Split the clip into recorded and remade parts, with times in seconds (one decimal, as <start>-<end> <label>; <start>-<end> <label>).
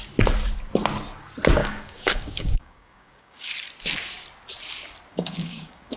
0.0-1.6 recorded; 1.6-3.5 remade; 3.5-5.1 recorded; 5.1-6.0 remade